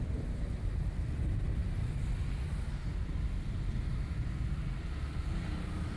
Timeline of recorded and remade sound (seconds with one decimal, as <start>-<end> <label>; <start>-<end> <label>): 0.0-6.0 recorded